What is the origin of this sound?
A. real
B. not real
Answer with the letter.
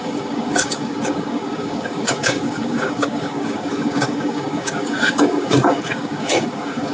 B